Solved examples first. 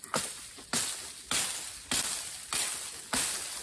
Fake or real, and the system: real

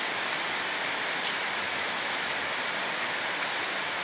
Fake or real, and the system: fake, vocoder, BigVGAN v2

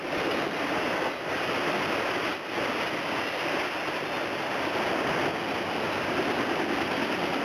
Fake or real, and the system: real